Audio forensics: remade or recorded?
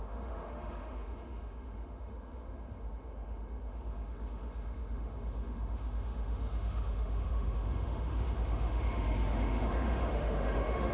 remade